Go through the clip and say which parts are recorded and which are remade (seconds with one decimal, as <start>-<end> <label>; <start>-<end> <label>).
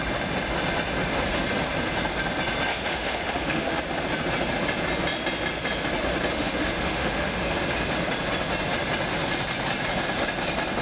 0.0-2.7 recorded; 2.7-3.8 remade; 3.8-6.3 recorded; 6.3-7.4 remade; 7.4-10.8 recorded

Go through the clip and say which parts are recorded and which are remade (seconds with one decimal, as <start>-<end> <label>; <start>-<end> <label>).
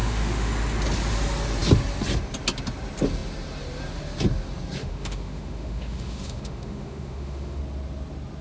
0.0-0.5 remade; 0.5-4.8 recorded; 4.8-7.6 remade; 7.6-8.4 recorded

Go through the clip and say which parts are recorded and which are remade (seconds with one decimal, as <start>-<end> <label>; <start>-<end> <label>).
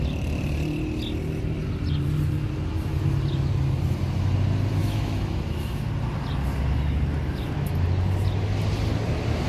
0.0-4.8 recorded; 4.8-5.8 remade; 5.8-9.5 recorded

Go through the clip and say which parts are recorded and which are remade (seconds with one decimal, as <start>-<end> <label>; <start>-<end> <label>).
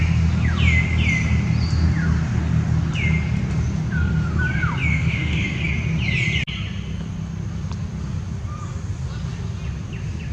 0.0-4.9 recorded; 4.9-5.6 remade; 5.6-10.3 recorded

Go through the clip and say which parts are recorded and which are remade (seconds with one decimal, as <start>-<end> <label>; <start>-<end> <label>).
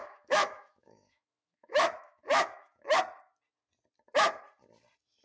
0.0-3.0 remade; 3.0-5.2 recorded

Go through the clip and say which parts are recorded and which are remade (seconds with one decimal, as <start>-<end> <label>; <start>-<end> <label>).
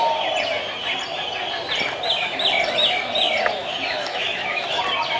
0.0-3.6 recorded; 3.6-4.8 remade; 4.8-5.2 recorded